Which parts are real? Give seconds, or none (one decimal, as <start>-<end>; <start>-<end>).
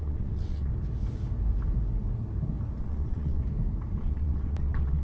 0.7-2.8; 3.4-4.0